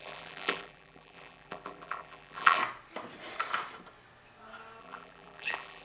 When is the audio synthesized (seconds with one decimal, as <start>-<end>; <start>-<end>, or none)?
0.0-2.6; 4.8-5.8